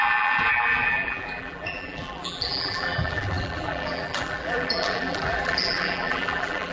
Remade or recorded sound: remade